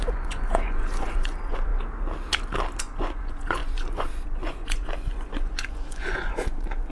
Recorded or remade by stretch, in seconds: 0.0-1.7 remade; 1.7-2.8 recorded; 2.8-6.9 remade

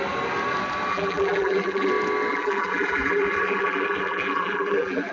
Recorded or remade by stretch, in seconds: 0.0-0.9 recorded; 0.9-1.9 remade; 1.9-2.3 recorded; 2.3-5.1 remade

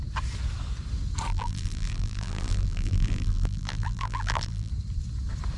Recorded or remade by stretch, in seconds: 0.0-1.3 recorded; 1.3-4.7 remade; 4.7-5.6 recorded

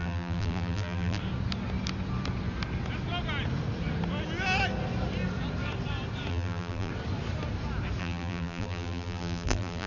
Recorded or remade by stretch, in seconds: 0.0-1.2 remade; 1.2-6.3 recorded; 6.3-6.9 remade; 6.9-8.0 recorded; 8.0-9.9 remade

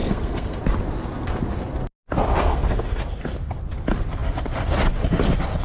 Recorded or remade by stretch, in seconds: 0.0-0.6 remade; 0.6-2.4 recorded; 2.4-3.0 remade; 3.0-5.6 recorded

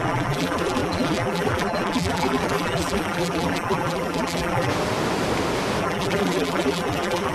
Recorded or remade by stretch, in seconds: 0.0-4.7 remade; 4.7-5.8 recorded; 5.8-7.3 remade